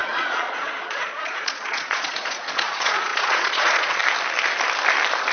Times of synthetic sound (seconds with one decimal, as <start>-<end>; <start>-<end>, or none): 0.0-4.0